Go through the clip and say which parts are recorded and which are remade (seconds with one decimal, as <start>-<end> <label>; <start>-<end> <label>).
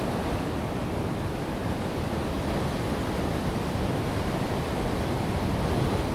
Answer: 0.0-0.8 recorded; 0.8-4.5 remade; 4.5-6.1 recorded